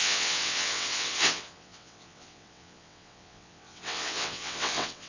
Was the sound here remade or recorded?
remade